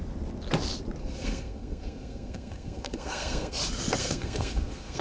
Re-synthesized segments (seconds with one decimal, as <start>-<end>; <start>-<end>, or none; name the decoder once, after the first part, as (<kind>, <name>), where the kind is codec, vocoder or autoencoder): 1.0-3.6 (codec, SNAC); 4.0-5.0